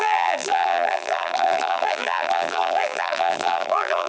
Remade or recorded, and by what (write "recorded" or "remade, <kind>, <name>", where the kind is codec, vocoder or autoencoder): remade, vocoder, BigVGAN v2